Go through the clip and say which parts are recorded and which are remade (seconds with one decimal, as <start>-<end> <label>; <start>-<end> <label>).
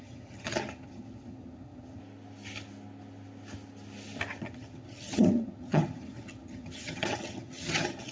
0.0-2.0 remade; 2.0-4.4 recorded; 4.4-8.1 remade